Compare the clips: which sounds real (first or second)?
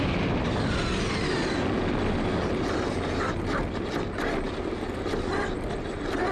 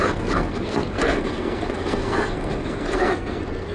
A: first